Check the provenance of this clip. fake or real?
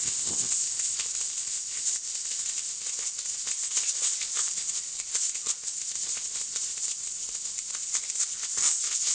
fake